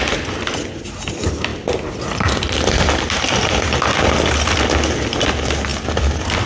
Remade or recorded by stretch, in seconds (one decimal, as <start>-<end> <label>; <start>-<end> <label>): 0.0-6.5 recorded